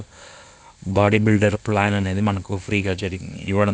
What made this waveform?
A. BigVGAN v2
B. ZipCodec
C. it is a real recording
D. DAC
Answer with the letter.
B